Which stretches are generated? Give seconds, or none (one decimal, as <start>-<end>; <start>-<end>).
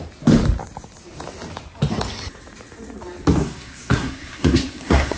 3.4-5.2